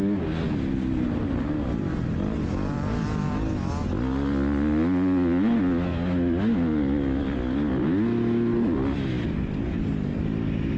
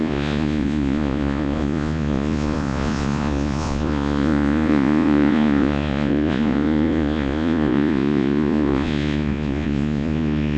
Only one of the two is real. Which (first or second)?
first